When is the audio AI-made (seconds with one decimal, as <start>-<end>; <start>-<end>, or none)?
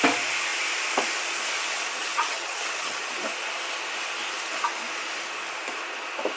2.0-3.0